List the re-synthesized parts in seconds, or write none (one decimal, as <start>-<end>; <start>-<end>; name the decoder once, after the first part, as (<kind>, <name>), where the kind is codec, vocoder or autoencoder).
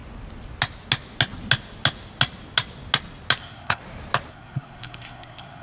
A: 3.4-3.8 (codec, SNAC); 4.3-5.6